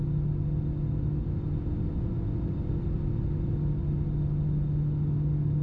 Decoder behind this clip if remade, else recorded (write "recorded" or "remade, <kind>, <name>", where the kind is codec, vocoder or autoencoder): recorded